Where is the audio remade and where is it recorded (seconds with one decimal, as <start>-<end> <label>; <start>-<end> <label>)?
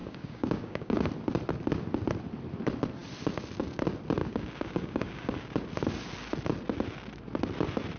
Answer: 0.0-1.1 remade; 1.1-4.2 recorded; 4.2-5.4 remade; 5.4-8.0 recorded